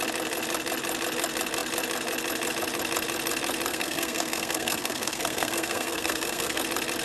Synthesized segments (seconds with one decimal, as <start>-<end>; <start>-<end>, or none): 3.7-6.6